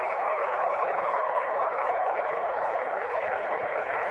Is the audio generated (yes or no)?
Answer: yes